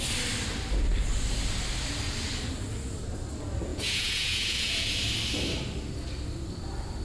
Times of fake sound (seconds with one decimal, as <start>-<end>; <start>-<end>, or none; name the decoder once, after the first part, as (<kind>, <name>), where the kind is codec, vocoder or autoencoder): 3.7-5.0 (vocoder, Vocos)